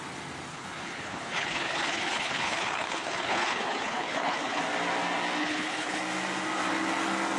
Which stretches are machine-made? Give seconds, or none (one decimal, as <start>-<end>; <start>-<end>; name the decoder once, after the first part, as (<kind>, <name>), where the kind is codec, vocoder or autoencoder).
0.5-4.6 (codec, HILCodec); 5.4-6.0

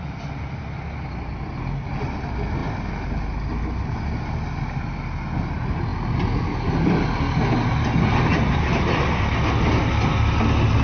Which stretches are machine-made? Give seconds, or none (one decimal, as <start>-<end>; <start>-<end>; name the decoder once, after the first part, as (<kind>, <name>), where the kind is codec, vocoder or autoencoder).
none

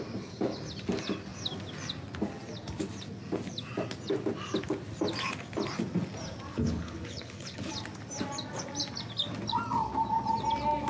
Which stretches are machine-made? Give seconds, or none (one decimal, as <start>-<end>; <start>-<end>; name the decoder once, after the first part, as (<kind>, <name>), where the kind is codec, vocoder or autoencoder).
6.5-7.7 (codec, HILCodec)

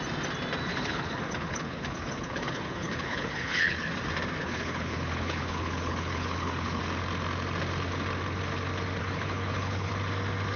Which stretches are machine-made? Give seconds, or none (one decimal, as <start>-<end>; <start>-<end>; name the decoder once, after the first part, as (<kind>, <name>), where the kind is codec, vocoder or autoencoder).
0.7-3.9 (codec, HILCodec); 4.4-6.8; 9.0-9.9

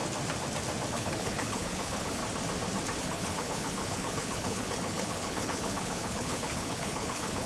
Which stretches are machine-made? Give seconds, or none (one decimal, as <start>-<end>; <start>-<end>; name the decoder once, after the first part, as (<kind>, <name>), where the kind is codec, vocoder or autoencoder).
0.9-2.2 (codec, HILCodec); 3.0-7.5